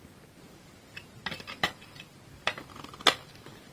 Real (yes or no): no